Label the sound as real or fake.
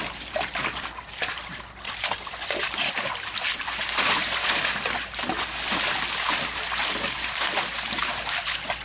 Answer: real